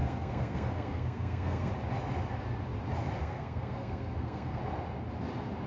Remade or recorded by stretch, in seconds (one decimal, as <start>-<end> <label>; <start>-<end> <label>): 0.0-1.7 remade; 1.7-3.2 recorded; 3.2-4.6 remade; 4.6-5.7 recorded